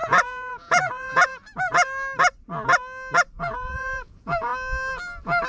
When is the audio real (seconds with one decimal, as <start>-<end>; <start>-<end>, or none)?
1.3-3.4; 4.5-5.5